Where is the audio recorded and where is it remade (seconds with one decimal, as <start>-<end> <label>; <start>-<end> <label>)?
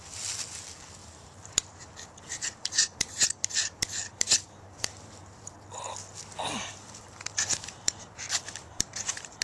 0.0-1.0 recorded; 1.0-5.5 remade; 5.5-6.7 recorded; 6.7-9.4 remade